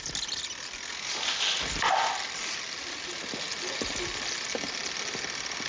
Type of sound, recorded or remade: recorded